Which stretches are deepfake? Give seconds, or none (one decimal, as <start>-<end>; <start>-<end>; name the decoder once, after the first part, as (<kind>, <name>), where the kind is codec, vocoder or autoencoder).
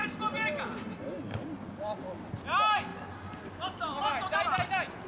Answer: none